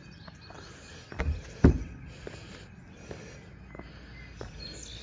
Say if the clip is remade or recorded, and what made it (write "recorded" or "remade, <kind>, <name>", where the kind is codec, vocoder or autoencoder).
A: recorded